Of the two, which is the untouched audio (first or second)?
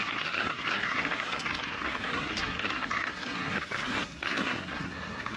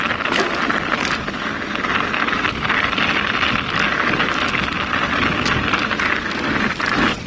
second